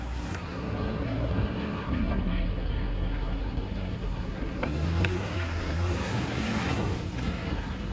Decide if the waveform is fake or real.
fake